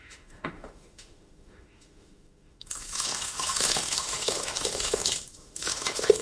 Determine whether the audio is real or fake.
fake